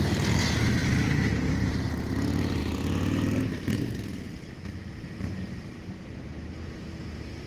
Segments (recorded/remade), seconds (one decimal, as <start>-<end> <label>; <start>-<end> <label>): 0.0-2.6 remade; 2.6-3.5 recorded; 3.5-4.3 remade; 4.3-5.0 recorded; 5.0-7.5 remade